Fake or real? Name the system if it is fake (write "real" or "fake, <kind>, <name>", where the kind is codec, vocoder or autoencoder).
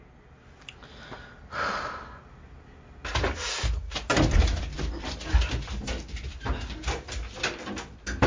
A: real